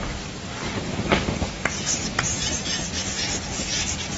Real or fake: real